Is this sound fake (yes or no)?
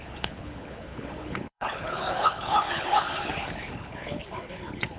yes